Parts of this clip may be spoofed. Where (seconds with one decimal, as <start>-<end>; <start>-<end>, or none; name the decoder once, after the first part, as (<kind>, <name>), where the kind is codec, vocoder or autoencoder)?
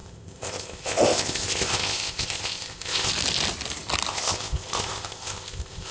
0.0-3.1 (codec, ZipCodec); 4.1-5.9